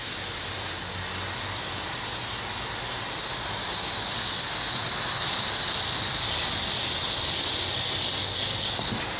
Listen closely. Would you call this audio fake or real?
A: real